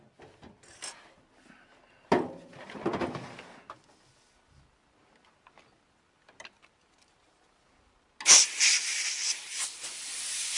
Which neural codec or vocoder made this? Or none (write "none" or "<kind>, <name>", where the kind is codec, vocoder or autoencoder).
none